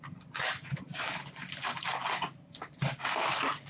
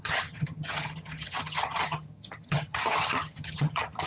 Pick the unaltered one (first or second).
first